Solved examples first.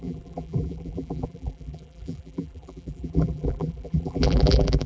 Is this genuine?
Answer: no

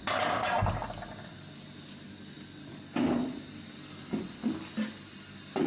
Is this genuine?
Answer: yes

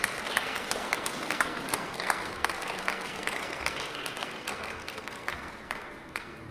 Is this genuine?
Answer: no